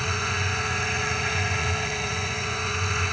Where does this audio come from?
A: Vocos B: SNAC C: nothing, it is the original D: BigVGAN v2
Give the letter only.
A